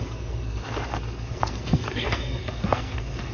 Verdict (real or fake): fake